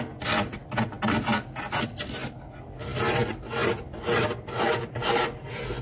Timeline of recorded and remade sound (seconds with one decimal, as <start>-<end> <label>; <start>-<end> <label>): 0.0-5.8 recorded